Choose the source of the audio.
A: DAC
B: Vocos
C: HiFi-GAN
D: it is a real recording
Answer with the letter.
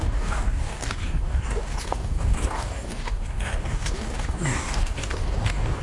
A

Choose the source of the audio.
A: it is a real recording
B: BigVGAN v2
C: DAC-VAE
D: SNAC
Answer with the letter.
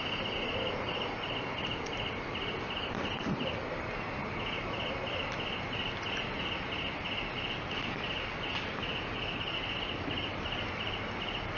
A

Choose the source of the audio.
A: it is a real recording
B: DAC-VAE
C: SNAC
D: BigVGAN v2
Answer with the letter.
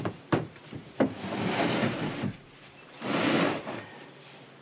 D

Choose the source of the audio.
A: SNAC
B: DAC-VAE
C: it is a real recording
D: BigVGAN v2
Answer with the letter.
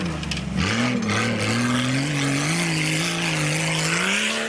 C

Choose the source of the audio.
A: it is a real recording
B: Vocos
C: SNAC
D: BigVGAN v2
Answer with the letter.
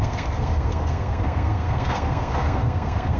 C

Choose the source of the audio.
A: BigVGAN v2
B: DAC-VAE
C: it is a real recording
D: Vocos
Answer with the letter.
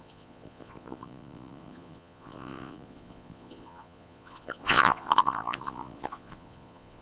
D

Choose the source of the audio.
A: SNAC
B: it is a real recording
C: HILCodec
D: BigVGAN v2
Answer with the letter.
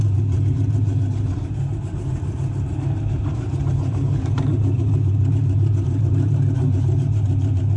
D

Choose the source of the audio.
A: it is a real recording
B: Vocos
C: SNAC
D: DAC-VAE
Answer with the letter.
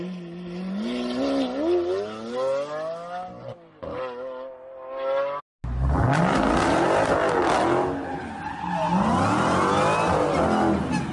A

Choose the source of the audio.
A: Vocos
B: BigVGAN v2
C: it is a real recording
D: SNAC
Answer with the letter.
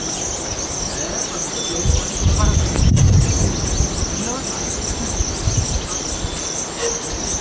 C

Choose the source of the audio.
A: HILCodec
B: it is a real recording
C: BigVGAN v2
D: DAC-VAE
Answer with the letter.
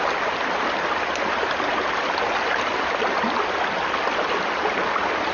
B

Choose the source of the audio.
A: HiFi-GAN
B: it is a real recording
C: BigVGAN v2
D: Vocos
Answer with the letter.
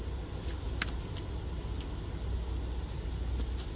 B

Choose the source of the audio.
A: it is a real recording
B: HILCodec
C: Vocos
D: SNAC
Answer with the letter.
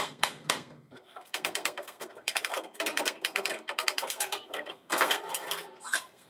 D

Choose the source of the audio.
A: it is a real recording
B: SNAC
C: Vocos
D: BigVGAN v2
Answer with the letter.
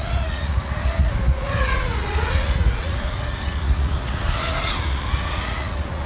C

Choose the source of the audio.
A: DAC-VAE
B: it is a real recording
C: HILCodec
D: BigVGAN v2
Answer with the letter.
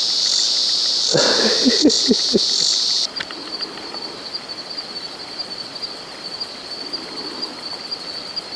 B